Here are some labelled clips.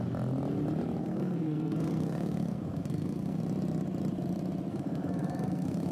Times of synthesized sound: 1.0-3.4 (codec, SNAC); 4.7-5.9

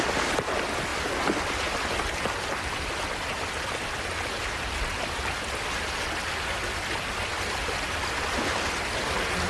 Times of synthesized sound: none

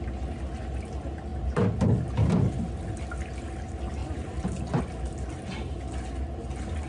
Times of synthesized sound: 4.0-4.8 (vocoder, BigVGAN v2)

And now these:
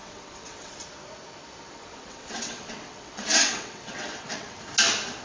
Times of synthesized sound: 0.0-0.8 (vocoder, WaveNeXt); 1.8-4.6

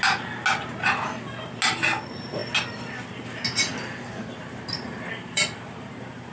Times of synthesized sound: 3.7-6.3 (vocoder, BigVGAN v2)

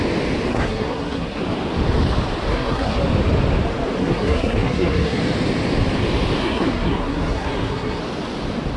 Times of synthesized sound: 0.5-1.4 (codec, SNAC); 2.5-3.0; 4.0-5.2; 6.4-8.0

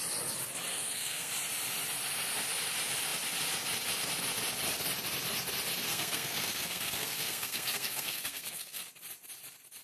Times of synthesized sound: 0.7-1.3 (codec, SNAC); 5.9-8.9